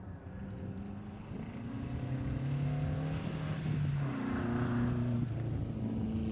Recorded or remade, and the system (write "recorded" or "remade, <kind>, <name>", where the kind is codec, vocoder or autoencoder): recorded